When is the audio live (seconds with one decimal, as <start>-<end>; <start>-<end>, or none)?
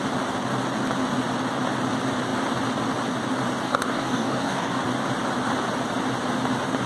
0.0-3.6; 4.8-6.9